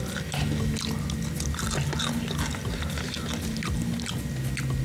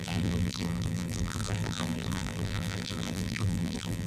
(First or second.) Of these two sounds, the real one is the first